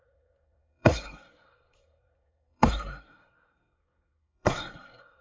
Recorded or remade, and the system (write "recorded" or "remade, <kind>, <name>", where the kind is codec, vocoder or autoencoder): remade, codec, SNAC